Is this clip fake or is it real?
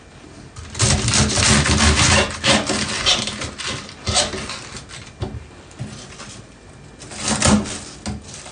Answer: real